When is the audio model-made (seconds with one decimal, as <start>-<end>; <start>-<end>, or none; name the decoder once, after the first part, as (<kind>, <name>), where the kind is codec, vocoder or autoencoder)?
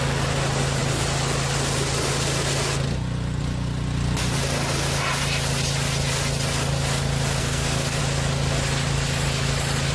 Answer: 7.4-8.0 (codec, SNAC)